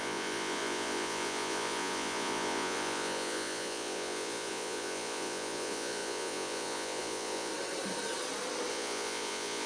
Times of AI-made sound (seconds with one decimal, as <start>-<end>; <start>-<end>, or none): 0.0-7.5; 8.7-9.7